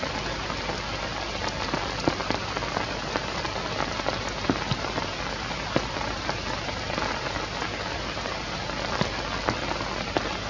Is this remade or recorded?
recorded